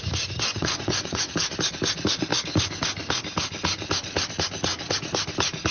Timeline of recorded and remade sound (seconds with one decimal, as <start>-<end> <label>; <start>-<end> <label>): 0.0-0.5 recorded; 0.5-1.3 remade; 1.3-5.7 recorded